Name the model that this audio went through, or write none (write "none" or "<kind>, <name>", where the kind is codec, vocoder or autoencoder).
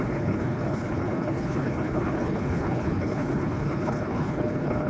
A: codec, HILCodec